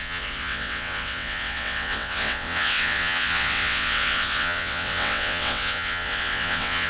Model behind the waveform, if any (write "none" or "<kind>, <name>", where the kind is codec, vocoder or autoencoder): vocoder, WaveNeXt